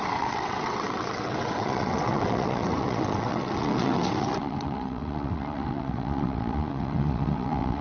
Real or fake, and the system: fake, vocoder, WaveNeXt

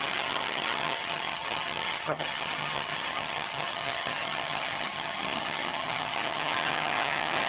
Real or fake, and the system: fake, vocoder, HiFi-GAN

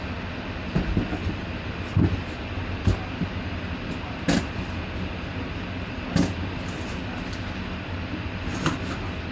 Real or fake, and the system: real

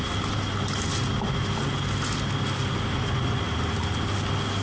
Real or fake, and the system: real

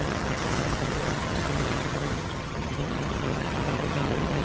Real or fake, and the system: fake, vocoder, HiFi-GAN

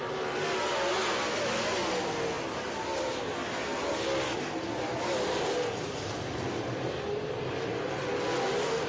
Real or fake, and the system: real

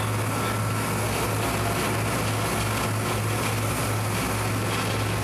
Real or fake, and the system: real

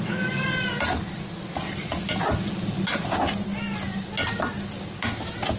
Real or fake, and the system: real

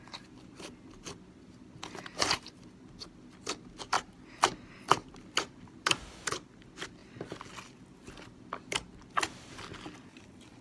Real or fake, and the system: real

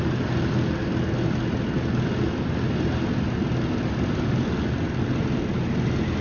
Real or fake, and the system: real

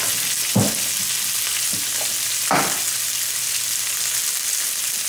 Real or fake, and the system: real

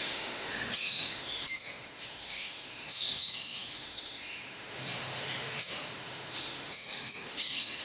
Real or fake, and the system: fake, autoencoder, DAC-VAE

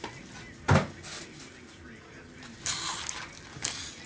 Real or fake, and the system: real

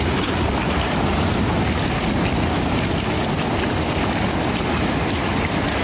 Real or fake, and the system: real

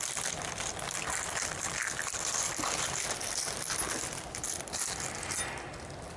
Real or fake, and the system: real